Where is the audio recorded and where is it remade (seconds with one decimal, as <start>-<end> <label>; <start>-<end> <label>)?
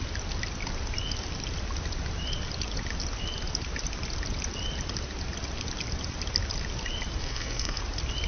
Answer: 0.0-7.2 recorded; 7.2-7.8 remade; 7.8-8.3 recorded